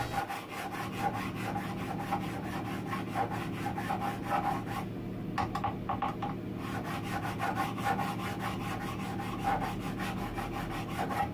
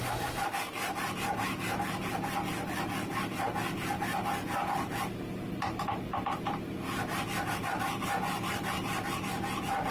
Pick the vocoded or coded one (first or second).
second